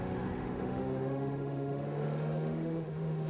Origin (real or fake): fake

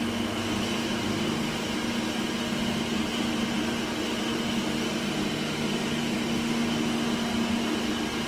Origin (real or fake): real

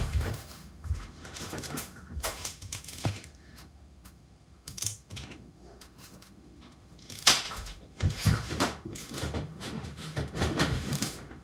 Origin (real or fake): fake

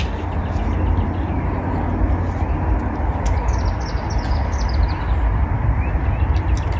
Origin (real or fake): real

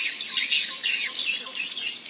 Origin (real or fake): real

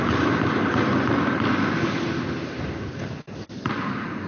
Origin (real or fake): real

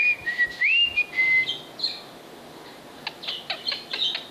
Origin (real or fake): real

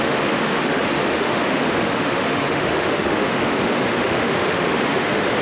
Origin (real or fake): fake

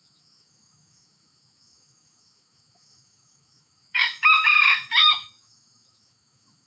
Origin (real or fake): fake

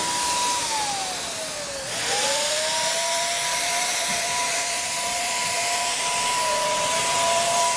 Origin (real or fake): real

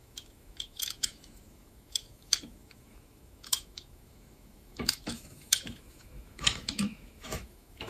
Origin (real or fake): fake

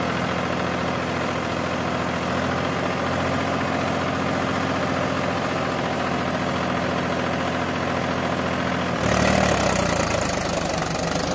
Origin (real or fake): real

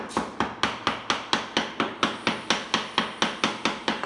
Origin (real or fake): real